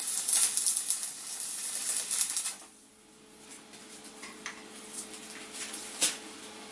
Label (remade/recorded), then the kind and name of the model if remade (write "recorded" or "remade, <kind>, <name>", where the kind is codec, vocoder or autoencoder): recorded